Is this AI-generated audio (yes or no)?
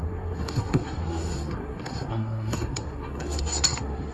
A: yes